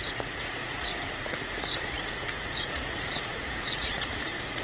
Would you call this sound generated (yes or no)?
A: yes